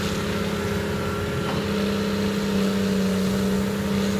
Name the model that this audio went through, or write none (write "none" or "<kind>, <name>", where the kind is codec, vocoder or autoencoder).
none